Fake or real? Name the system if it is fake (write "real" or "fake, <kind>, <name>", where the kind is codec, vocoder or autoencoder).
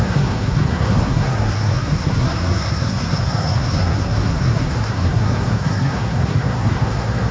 fake, codec, SNAC